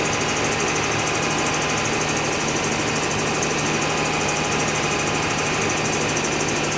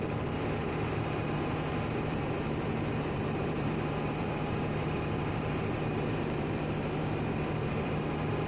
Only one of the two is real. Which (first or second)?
first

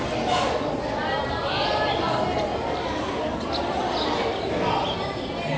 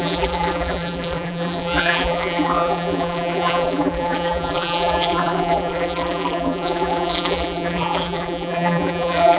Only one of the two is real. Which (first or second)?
first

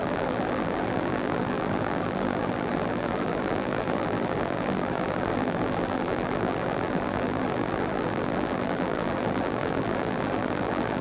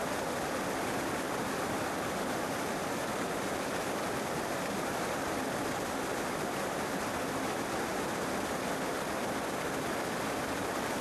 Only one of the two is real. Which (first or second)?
second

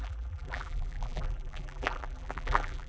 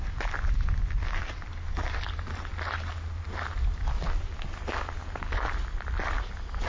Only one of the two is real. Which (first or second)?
second